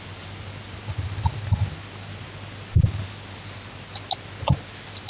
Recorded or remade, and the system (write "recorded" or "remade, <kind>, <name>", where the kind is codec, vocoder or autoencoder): recorded